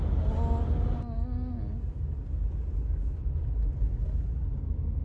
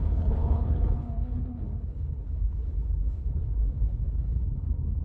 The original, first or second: first